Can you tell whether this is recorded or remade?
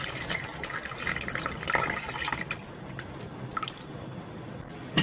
recorded